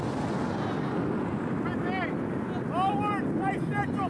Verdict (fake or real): real